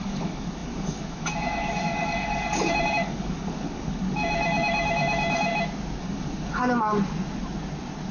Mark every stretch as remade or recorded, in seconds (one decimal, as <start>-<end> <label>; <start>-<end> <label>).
0.0-5.5 remade; 5.5-6.0 recorded; 6.0-6.6 remade; 6.6-8.1 recorded